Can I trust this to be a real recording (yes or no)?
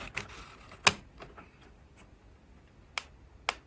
yes